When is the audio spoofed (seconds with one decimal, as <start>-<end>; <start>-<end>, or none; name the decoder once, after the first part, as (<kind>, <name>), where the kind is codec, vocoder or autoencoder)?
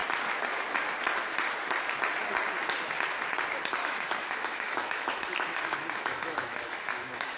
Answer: 3.8-7.4 (autoencoder, DAC-VAE)